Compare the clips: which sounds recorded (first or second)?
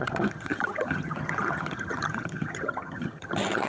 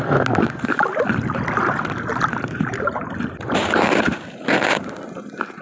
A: second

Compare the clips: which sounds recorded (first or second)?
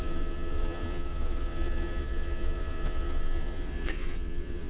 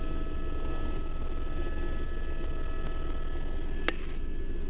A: second